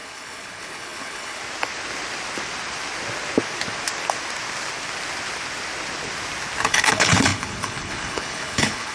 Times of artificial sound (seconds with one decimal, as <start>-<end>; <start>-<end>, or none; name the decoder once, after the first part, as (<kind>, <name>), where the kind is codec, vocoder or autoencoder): 0.0-1.4 (codec, HILCodec); 6.6-8.9